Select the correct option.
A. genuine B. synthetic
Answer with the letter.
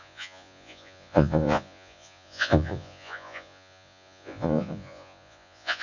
B